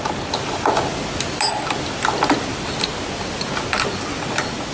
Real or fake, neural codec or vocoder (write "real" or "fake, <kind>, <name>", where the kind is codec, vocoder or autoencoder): real